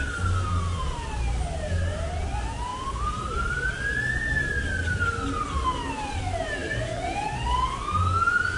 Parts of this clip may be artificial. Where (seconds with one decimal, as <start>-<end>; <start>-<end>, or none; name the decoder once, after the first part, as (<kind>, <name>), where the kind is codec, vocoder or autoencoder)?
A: none